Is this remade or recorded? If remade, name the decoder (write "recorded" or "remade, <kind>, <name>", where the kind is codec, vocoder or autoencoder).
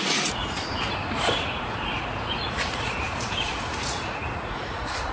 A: remade, vocoder, Vocos